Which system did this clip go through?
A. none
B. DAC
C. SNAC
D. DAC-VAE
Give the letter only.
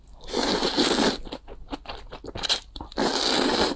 A